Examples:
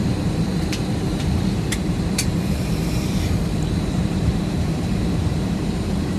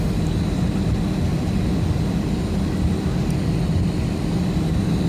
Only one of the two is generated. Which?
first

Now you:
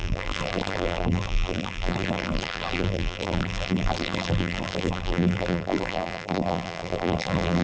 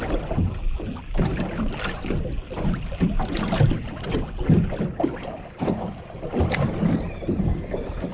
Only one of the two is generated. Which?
first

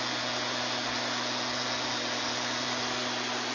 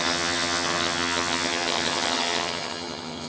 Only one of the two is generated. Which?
second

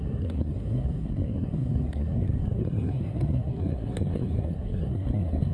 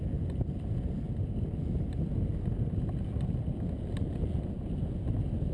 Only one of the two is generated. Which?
first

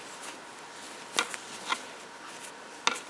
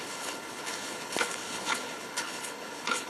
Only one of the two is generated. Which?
second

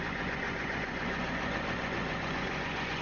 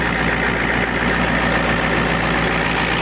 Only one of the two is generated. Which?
first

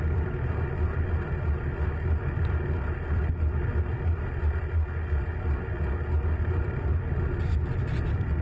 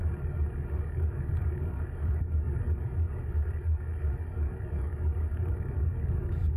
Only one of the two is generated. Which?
second